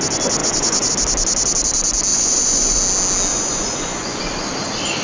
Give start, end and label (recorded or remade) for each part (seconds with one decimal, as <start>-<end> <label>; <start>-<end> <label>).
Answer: 0.0-0.4 recorded; 0.4-0.9 remade; 0.9-2.1 recorded; 2.1-2.8 remade; 2.8-3.3 recorded; 3.3-4.2 remade; 4.2-5.0 recorded

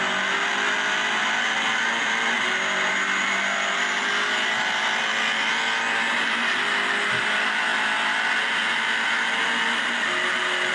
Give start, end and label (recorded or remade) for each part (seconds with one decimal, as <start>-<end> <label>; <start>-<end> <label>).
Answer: 0.0-10.7 recorded

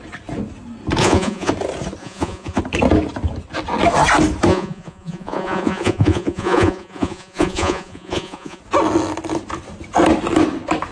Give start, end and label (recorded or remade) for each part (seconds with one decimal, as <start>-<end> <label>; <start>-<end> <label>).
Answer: 0.0-1.0 recorded; 1.0-1.5 remade; 1.5-2.0 recorded; 2.0-2.6 remade; 2.6-4.5 recorded; 4.5-8.6 remade; 8.6-10.9 recorded

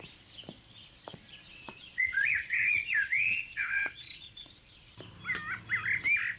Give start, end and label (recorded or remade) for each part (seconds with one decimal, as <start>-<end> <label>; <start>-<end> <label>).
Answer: 0.0-1.1 recorded; 1.1-4.9 remade; 4.9-6.4 recorded

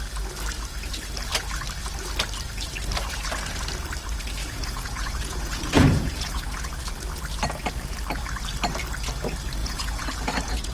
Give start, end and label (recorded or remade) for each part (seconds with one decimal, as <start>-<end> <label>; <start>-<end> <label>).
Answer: 0.0-4.4 recorded; 4.4-6.8 remade; 6.8-9.6 recorded; 9.6-10.7 remade

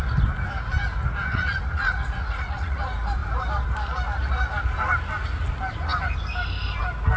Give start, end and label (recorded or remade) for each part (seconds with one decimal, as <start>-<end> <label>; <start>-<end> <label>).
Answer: 0.0-1.3 recorded; 1.3-2.8 remade; 2.8-7.2 recorded

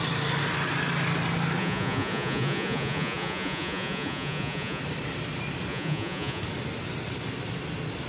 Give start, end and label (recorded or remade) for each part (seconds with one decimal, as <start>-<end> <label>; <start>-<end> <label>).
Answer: 0.0-1.6 recorded; 1.6-4.8 remade; 4.8-5.7 recorded; 5.7-6.4 remade; 6.4-8.1 recorded